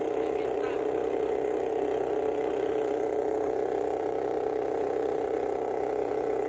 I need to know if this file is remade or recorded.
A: remade